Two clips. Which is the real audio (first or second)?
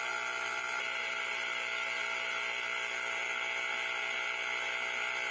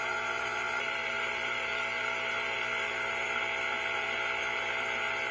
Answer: first